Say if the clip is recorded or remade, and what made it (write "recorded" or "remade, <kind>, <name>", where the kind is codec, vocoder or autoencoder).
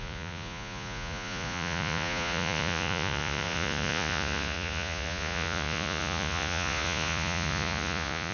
remade, vocoder, Vocos